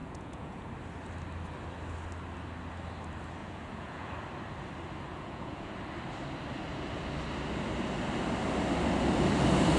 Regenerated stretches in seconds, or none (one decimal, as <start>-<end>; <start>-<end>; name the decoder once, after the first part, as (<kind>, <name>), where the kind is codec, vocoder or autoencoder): 0.0-0.7 (vocoder, Vocos); 3.4-4.1; 5.1-5.7